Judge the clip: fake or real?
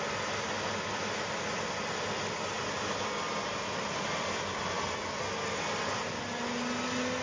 real